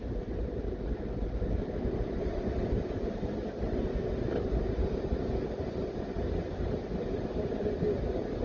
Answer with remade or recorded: recorded